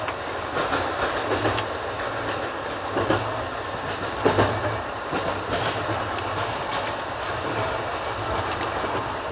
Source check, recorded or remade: recorded